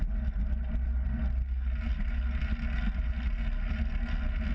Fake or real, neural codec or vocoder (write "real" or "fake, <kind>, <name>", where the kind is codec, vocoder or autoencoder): real